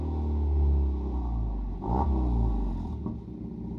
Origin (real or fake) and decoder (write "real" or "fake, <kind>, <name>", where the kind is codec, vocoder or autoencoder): real